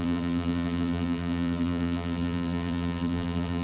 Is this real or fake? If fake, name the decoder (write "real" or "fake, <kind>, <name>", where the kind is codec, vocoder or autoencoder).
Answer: fake, vocoder, BigVGAN v2